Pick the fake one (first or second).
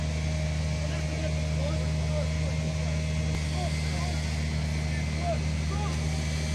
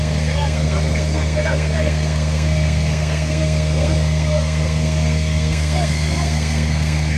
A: second